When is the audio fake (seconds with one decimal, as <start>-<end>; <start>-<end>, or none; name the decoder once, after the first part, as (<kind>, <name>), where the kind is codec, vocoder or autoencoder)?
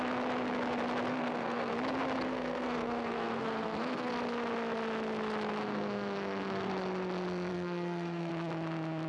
1.1-1.7 (codec, SNAC); 2.3-4.1; 5.6-6.7; 7.5-8.3